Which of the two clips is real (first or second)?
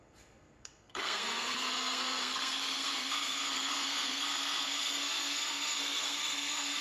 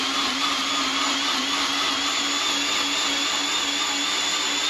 second